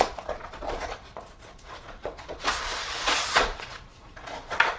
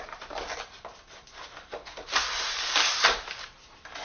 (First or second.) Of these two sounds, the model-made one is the first